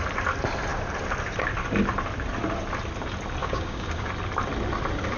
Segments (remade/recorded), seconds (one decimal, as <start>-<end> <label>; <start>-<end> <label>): 0.0-3.4 recorded; 3.4-4.1 remade; 4.1-5.2 recorded